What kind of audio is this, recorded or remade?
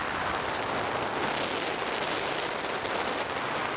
recorded